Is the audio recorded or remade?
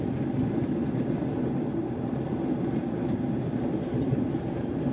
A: recorded